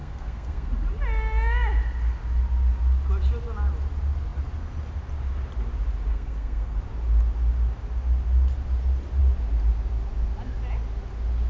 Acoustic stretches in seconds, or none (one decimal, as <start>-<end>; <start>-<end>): 0.7-6.1; 6.8-11.5